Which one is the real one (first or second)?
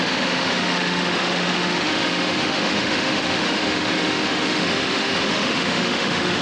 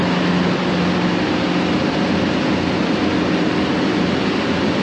second